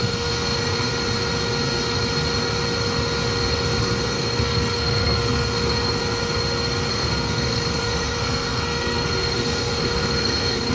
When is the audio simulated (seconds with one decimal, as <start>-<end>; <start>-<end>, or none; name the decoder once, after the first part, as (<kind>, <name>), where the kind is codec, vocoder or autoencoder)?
0.0-0.9 (codec, SNAC); 3.8-6.0; 6.9-10.7